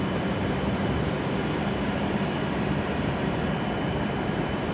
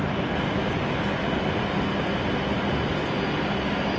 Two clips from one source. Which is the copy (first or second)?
first